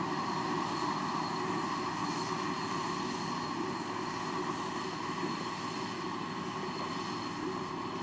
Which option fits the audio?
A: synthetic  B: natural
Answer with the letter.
B